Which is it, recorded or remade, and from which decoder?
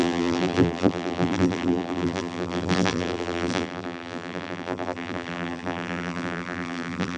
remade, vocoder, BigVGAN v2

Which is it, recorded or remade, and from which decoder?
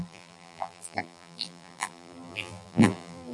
remade, vocoder, BigVGAN v2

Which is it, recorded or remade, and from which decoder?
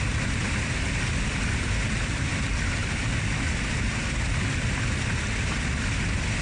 recorded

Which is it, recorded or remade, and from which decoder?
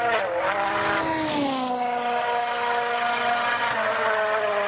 recorded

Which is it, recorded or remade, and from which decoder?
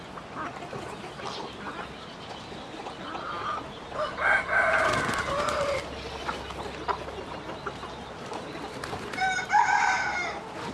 recorded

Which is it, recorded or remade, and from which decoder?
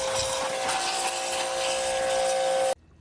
recorded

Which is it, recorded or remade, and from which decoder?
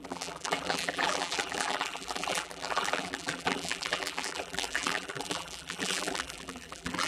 remade, vocoder, BigVGAN v2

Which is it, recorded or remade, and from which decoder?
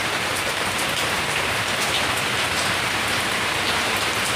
remade, vocoder, BigVGAN v2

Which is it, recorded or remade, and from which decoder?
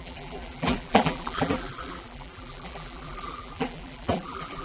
remade, vocoder, BigVGAN v2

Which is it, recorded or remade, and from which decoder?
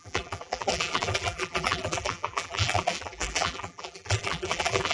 remade, vocoder, BigVGAN v2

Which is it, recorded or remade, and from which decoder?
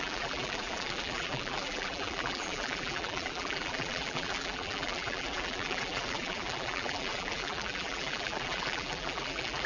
remade, vocoder, BigVGAN v2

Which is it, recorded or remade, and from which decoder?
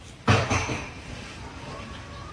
remade, vocoder, BigVGAN v2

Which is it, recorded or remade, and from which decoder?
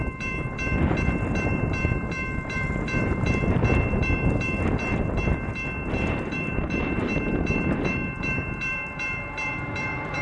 remade, vocoder, BigVGAN v2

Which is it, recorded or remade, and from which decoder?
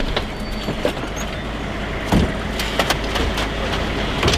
recorded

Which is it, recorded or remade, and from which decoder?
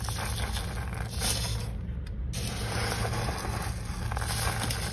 recorded